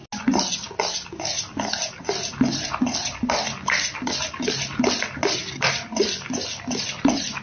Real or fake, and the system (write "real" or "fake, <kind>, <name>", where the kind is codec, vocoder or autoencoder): real